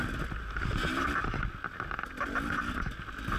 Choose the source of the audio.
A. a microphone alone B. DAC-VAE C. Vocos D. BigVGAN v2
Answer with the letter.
A